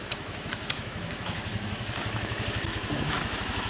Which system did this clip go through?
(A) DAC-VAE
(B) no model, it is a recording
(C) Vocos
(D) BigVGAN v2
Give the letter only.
A